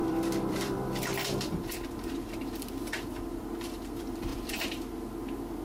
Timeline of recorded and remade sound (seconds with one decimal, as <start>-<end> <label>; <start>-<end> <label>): 0.0-5.6 remade